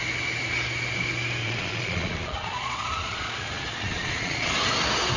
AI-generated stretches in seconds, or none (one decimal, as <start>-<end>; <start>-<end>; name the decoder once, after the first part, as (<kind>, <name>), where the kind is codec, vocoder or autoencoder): 1.4-4.5 (vocoder, Vocos)